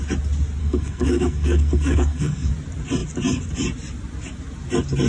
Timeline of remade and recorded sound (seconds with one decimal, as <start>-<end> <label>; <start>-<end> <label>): 0.0-0.6 recorded; 0.6-2.5 remade; 2.5-5.1 recorded